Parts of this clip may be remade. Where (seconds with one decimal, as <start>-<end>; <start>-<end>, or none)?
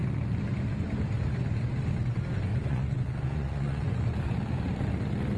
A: 2.5-4.2